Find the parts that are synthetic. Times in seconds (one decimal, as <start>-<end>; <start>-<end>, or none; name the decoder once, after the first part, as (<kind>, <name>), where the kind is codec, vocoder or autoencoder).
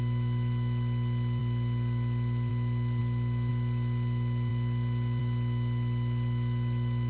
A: none